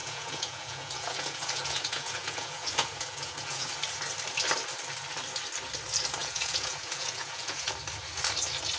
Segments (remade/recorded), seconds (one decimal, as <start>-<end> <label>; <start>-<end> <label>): 0.0-3.7 remade; 3.7-6.2 recorded; 6.2-7.7 remade; 7.7-8.8 recorded